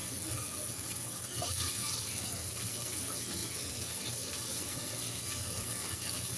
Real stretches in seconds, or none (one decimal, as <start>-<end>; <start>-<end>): none